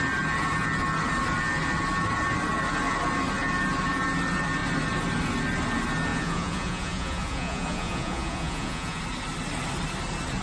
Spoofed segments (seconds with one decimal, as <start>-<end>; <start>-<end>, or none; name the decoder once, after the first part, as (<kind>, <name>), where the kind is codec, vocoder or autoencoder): 6.1-9.0 (vocoder, Vocos)